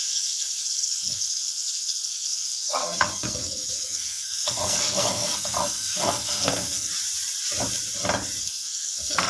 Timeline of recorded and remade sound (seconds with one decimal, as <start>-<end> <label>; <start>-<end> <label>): 0.0-6.9 remade; 6.9-8.4 recorded; 8.4-9.3 remade